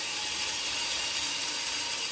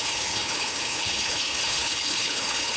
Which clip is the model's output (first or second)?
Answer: second